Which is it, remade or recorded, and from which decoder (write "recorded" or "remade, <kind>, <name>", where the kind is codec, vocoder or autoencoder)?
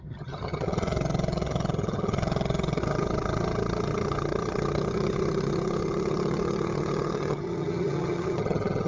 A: remade, vocoder, HiFi-GAN